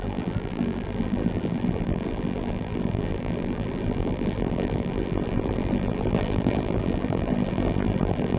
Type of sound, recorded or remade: remade